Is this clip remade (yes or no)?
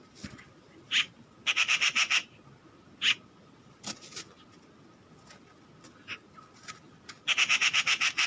no